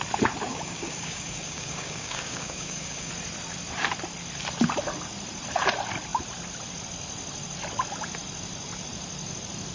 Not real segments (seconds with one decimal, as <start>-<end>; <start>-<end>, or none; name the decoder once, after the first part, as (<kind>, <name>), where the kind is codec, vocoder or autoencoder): 0.5-3.1 (codec, DAC)